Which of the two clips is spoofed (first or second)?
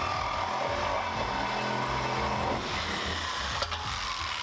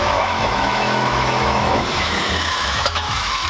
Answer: second